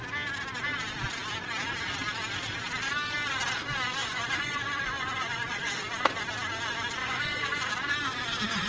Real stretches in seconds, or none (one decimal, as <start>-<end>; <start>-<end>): 0.0-4.0; 5.8-7.0; 7.7-8.7